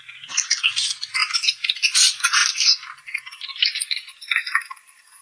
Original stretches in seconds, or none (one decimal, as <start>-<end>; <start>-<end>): 0.0-5.2